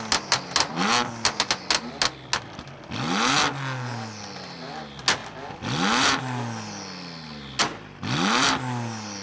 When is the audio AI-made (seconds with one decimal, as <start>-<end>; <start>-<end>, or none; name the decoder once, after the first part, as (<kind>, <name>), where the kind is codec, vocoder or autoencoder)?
none